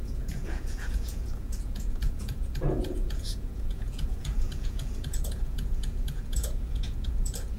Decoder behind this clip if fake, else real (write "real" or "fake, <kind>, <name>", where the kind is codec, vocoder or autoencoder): fake, vocoder, Vocos